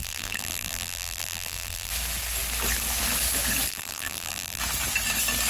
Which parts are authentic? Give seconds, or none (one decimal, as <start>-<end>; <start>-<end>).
1.9-3.7; 4.6-5.5